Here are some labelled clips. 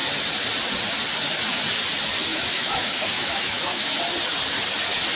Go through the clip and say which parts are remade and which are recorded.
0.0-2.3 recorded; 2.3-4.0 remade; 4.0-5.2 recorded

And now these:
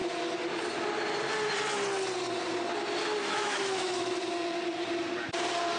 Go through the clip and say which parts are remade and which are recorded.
0.0-3.2 recorded; 3.2-4.1 remade; 4.1-5.8 recorded

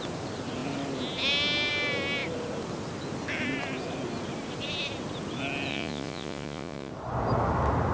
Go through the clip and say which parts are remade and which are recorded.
0.0-5.7 recorded; 5.7-6.9 remade; 6.9-7.9 recorded

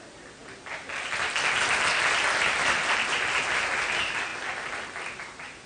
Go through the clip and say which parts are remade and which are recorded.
0.0-5.7 recorded

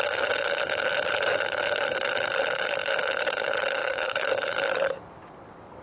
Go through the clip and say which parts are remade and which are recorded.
0.0-3.8 recorded; 3.8-4.3 remade; 4.3-5.8 recorded

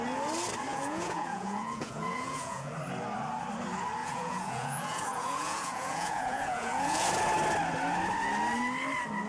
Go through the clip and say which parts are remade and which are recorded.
0.0-0.7 recorded; 0.7-2.7 remade; 2.7-4.0 recorded; 4.0-7.1 remade; 7.1-9.3 recorded

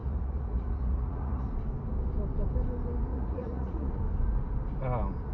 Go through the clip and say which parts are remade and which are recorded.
0.0-1.5 remade; 1.5-3.1 recorded; 3.1-4.0 remade; 4.0-5.3 recorded

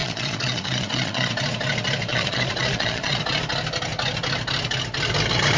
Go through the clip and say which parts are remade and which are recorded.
0.0-1.3 remade; 1.3-2.1 recorded; 2.1-3.2 remade; 3.2-5.6 recorded